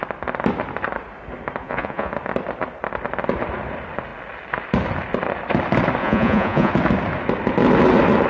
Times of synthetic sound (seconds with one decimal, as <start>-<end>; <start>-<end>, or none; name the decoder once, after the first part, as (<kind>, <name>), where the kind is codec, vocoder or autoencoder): 1.6-2.1 (vocoder, Vocos); 6.0-6.7